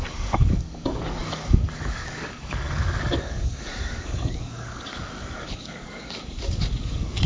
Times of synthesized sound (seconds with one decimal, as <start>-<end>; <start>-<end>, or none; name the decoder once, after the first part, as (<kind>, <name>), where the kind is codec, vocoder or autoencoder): 0.0-7.3 (codec, DAC)

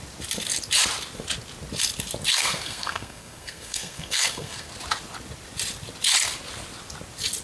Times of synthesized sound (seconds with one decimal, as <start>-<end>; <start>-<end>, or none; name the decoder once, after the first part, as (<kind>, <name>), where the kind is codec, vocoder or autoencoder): 2.3-4.7 (codec, SNAC)

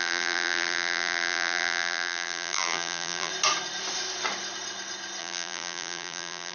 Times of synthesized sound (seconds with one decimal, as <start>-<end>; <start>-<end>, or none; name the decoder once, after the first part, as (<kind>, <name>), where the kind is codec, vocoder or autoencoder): 0.0-3.3 (vocoder, BigVGAN v2); 5.2-6.5

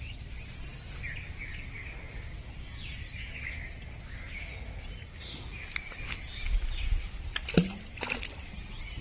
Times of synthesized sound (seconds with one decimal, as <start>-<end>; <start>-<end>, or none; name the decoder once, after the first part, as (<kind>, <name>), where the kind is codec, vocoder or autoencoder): 1.5-2.0 (codec, DAC)